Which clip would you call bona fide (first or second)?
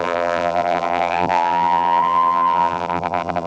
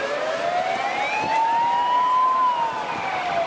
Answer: second